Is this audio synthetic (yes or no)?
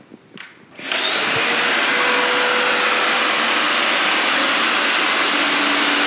no